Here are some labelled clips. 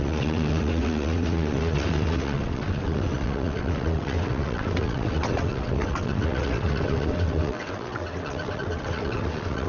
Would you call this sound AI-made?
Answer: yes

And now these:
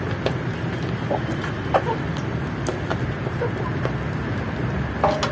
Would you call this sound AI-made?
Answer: no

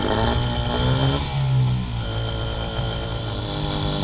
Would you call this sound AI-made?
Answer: no